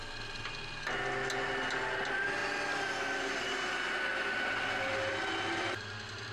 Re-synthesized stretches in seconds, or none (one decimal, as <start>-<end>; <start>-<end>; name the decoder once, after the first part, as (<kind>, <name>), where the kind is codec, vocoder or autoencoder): none

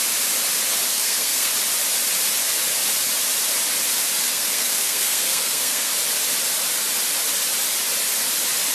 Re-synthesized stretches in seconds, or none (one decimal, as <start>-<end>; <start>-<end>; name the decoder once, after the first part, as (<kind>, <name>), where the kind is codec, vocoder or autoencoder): 0.9-1.5 (codec, SNAC); 4.3-5.9

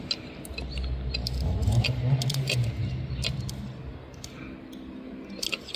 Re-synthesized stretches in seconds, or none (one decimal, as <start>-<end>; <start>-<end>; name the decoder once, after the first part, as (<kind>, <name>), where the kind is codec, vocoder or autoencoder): none

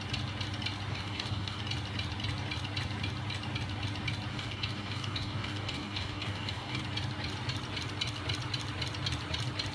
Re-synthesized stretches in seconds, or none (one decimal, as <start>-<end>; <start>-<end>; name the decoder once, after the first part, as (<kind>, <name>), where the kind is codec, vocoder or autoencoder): 0.9-1.6 (codec, DAC); 4.3-6.8

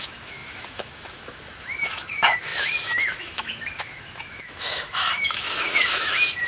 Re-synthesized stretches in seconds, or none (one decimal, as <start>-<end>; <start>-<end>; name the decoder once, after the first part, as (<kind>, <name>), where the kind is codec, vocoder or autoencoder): 0.0-6.5 (autoencoder, DAC-VAE)

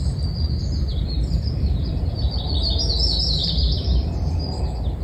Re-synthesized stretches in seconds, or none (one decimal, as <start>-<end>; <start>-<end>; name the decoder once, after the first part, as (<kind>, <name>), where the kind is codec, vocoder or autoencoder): 0.9-2.1 (vocoder, BigVGAN v2); 3.4-4.6

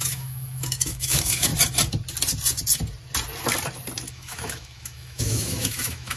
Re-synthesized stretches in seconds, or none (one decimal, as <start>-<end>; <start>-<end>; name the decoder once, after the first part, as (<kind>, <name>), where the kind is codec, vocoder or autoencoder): 0.0-1.5 (autoencoder, DAC-VAE); 4.1-6.2